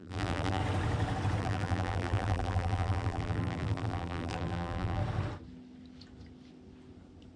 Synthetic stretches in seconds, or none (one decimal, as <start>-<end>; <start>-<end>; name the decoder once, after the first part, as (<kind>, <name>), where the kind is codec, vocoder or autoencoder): 0.0-0.6 (vocoder, BigVGAN v2); 1.4-5.0